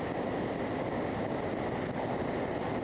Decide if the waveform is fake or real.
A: real